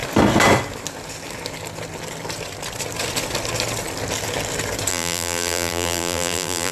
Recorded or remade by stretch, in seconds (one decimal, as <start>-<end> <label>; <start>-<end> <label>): 0.0-4.9 recorded; 4.9-6.7 remade

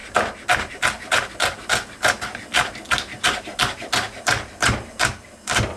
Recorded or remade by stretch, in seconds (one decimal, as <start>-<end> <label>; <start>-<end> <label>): 0.0-5.8 recorded